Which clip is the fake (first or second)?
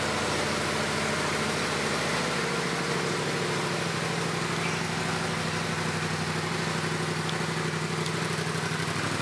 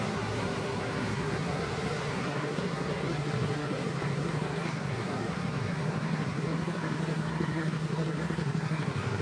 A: second